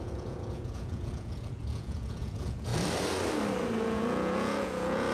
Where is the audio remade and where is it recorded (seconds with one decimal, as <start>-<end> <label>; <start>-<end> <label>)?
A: 0.0-2.7 remade; 2.7-3.8 recorded; 3.8-5.1 remade